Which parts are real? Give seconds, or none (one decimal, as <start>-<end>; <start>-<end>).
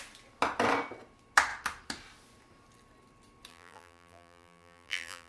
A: 0.0-3.5